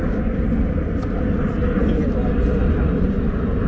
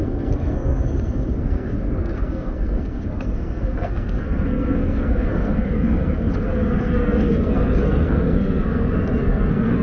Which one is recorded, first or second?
first